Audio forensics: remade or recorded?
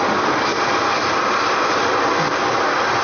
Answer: recorded